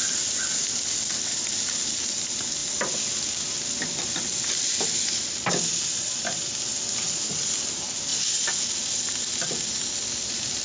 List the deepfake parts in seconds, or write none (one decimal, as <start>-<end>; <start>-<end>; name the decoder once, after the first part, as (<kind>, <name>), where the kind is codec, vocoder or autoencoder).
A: none